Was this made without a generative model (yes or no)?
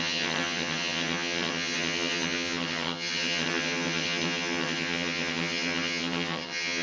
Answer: no